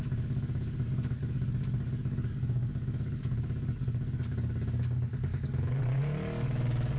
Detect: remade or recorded remade